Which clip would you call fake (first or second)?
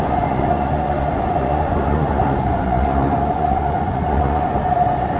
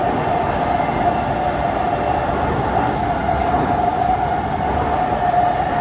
first